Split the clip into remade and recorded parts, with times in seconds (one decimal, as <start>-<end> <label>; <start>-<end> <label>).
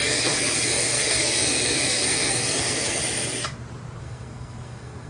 0.0-3.0 remade; 3.0-4.0 recorded; 4.0-5.1 remade